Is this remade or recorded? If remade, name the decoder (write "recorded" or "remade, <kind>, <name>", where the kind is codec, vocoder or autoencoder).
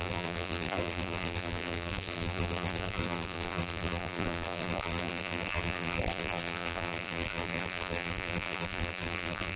remade, vocoder, BigVGAN v2